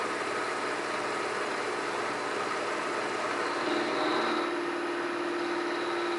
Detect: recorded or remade recorded